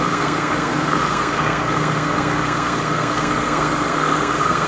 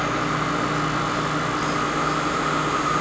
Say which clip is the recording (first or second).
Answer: second